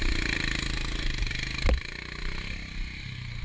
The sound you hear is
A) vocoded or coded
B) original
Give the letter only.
B